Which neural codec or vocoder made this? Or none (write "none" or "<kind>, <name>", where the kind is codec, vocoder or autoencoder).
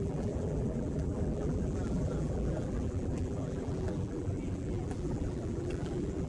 vocoder, BigVGAN v2